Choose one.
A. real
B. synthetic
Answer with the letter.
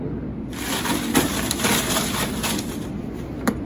A